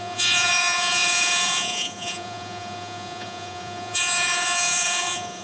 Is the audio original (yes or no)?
no